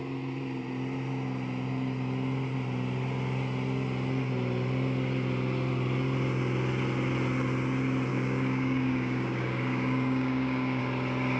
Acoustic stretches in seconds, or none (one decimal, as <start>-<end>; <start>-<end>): 0.0-8.1; 10.8-11.4